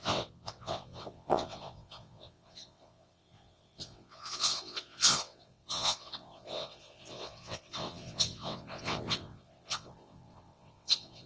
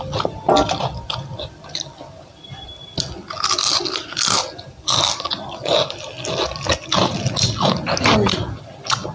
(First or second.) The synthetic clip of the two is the first